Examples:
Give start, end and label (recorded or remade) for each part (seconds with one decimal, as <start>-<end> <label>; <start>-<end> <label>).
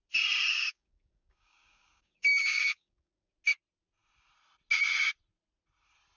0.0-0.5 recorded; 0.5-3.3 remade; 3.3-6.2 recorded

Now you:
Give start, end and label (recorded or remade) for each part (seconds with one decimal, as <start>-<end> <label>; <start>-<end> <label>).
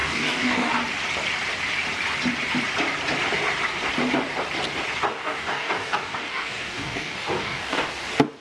0.0-0.7 remade; 0.7-5.1 recorded; 5.1-7.9 remade; 7.9-8.4 recorded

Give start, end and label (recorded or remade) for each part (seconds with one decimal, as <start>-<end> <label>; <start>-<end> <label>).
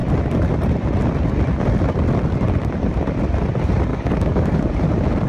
0.0-3.9 recorded; 3.9-4.7 remade; 4.7-5.3 recorded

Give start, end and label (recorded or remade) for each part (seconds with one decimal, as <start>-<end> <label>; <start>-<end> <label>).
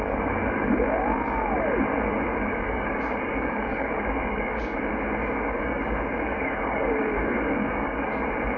0.0-2.3 recorded; 2.3-4.8 remade; 4.8-5.2 recorded; 5.2-8.2 remade; 8.2-8.6 recorded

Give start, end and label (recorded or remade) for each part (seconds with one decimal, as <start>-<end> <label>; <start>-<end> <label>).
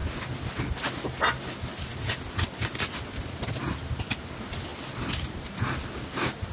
0.0-6.5 recorded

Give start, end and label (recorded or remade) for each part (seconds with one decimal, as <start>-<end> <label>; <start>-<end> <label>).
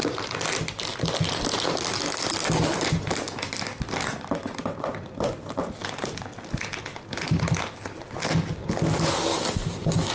0.0-9.3 recorded; 9.3-10.1 remade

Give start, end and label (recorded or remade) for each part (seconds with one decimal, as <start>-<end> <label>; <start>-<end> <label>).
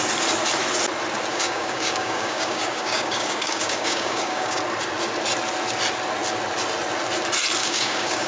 0.0-1.3 recorded; 1.3-4.6 remade; 4.6-7.6 recorded; 7.6-8.3 remade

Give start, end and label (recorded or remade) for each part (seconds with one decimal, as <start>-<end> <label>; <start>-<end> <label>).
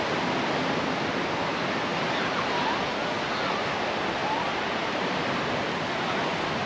0.0-6.7 recorded